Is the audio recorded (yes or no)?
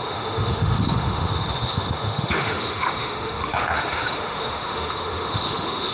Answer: no